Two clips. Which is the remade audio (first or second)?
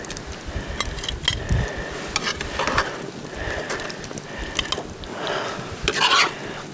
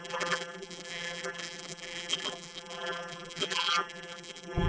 second